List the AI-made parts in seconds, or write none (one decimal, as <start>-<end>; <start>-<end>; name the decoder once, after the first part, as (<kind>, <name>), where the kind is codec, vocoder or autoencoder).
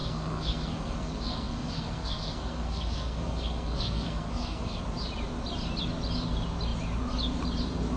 0.0-4.8 (codec, SNAC)